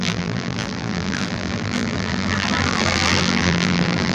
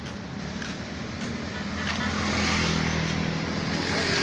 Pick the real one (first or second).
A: second